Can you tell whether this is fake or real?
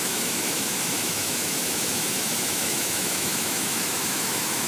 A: fake